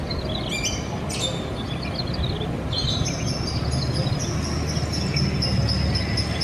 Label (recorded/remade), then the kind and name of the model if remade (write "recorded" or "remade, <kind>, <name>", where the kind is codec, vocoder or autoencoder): recorded